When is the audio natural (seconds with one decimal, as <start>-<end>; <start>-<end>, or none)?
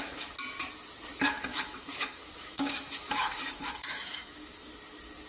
0.0-1.5; 4.7-5.3